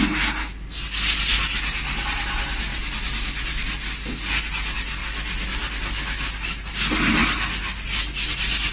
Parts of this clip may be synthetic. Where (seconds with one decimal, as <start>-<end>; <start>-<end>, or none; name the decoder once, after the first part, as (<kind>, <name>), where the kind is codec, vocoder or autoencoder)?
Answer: none